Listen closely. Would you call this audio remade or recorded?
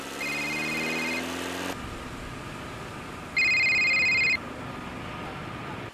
recorded